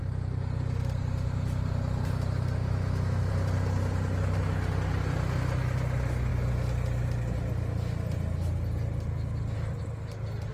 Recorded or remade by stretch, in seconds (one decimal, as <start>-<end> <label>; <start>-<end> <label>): 0.0-2.6 recorded; 2.6-3.3 remade; 3.3-10.5 recorded